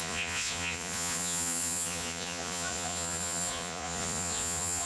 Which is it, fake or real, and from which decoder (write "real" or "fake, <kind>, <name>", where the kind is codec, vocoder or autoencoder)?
fake, vocoder, Vocos